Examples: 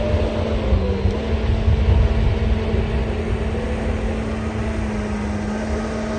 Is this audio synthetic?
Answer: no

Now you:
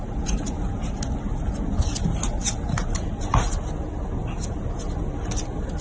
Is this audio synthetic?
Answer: no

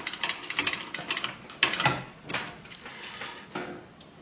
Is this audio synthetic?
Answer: no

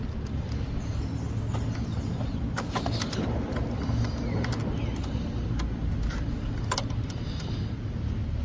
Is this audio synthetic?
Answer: no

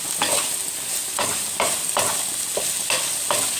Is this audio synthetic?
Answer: no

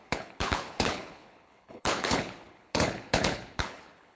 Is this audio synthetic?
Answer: yes